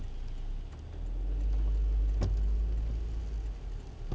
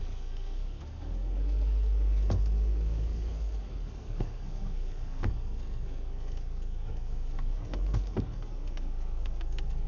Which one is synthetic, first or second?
second